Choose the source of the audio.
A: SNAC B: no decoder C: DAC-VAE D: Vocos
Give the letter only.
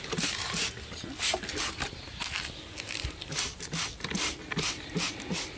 B